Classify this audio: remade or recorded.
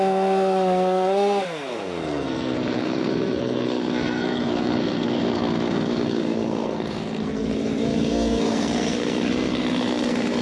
remade